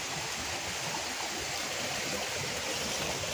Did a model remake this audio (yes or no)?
no